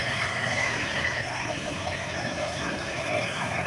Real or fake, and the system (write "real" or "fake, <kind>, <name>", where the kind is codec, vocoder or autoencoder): fake, codec, SNAC